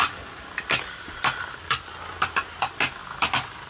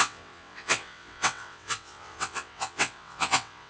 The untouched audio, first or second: first